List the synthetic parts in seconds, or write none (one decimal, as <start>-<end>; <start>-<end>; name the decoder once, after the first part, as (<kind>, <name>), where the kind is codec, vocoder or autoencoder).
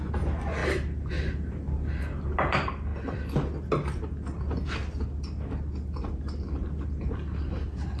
none